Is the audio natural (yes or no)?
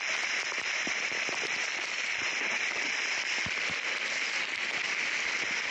yes